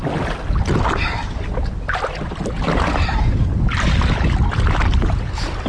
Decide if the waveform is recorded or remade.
recorded